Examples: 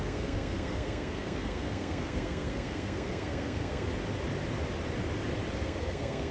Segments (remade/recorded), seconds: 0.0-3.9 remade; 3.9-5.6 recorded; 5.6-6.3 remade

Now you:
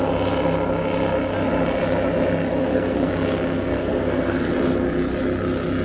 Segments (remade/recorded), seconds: 0.0-2.6 recorded; 2.6-3.1 remade; 3.1-3.7 recorded; 3.7-4.5 remade; 4.5-5.8 recorded

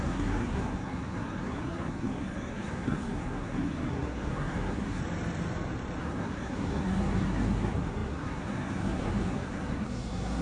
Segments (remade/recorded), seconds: 0.0-5.0 remade; 5.0-6.0 recorded; 6.0-10.4 remade

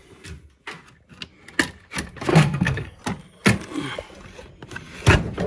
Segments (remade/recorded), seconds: 0.0-2.3 recorded; 2.3-3.0 remade; 3.0-5.5 recorded

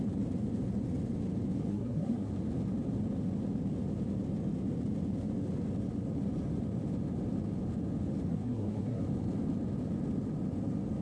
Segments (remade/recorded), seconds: 0.0-1.7 recorded; 1.7-2.3 remade; 2.3-8.3 recorded; 8.3-9.0 remade; 9.0-11.0 recorded

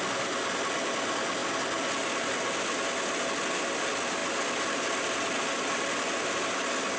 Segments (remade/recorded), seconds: 0.0-7.0 recorded